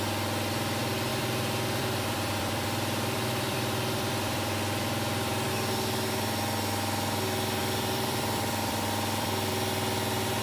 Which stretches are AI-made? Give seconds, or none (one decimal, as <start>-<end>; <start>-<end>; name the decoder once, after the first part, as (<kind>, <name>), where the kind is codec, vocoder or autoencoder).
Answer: 1.1-5.5 (vocoder, BigVGAN v2); 7.6-9.5